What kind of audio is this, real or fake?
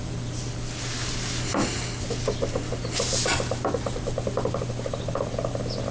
real